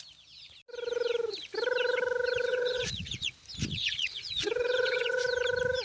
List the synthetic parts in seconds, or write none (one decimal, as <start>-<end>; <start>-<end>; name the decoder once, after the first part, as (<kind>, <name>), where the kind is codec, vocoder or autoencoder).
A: 2.5-3.3 (vocoder, Vocos); 3.7-5.2